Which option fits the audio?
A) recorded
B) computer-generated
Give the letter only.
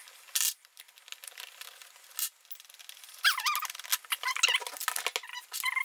A